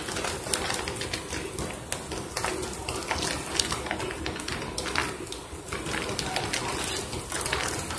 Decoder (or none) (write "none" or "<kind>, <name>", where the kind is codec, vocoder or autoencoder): none